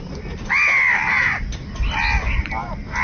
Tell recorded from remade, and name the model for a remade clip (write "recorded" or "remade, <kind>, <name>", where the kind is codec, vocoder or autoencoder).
recorded